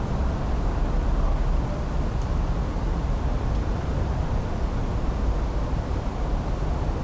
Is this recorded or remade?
recorded